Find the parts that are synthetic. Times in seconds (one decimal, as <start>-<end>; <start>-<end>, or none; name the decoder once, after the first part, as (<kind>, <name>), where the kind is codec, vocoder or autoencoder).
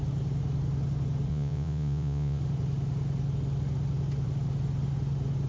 1.3-2.4 (vocoder, Vocos)